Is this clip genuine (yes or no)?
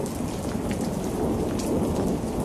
yes